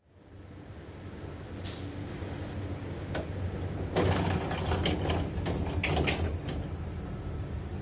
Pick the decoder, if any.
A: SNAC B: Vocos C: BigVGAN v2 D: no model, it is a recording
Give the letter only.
D